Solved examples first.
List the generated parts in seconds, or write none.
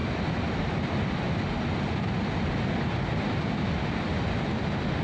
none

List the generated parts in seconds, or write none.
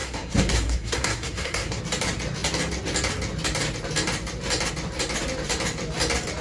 0.0-1.8 (codec, SNAC)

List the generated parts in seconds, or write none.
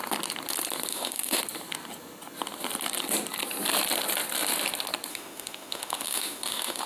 0.9-1.4 (autoencoder, DAC-VAE); 5.1-6.9